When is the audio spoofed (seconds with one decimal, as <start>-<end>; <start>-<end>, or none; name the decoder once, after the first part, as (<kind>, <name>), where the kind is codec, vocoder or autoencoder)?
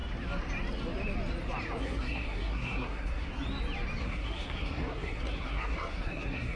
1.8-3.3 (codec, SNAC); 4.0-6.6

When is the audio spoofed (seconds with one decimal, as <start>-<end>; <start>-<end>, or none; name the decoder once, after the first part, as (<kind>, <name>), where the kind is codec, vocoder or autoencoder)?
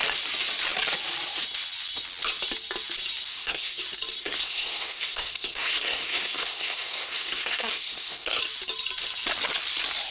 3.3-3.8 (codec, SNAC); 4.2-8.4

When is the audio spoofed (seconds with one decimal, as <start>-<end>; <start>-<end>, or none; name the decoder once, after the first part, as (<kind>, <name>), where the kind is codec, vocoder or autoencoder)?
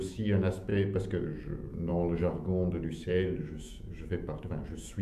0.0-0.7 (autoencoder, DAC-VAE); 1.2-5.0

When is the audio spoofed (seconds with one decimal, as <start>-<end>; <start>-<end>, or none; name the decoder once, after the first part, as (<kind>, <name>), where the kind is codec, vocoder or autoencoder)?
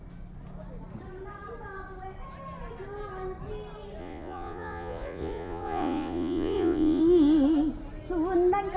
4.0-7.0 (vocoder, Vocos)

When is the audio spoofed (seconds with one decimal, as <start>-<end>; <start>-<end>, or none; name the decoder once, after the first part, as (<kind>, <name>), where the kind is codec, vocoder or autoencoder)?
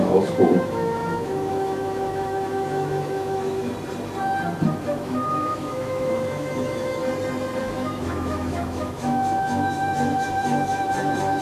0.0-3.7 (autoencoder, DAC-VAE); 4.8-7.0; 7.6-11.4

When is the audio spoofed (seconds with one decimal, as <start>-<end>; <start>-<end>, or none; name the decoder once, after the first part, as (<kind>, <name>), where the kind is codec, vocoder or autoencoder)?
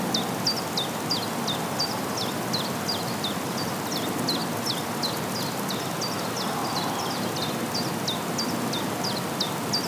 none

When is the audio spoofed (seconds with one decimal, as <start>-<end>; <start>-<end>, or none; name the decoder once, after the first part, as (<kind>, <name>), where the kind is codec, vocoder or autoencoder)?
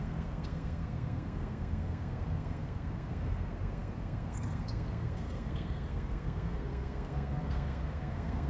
0.0-8.5 (codec, SNAC)